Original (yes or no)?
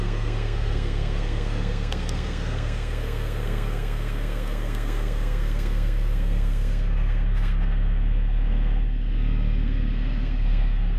no